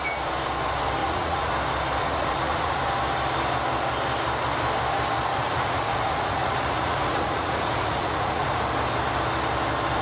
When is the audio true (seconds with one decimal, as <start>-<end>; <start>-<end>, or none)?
0.0-1.0; 1.5-2.0; 2.8-5.3; 8.6-10.0